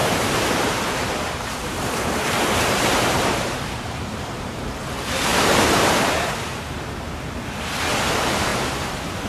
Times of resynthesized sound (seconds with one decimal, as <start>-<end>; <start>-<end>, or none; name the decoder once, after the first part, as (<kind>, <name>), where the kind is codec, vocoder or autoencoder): 0.0-4.6 (vocoder, BigVGAN v2); 5.3-7.1; 8.5-9.3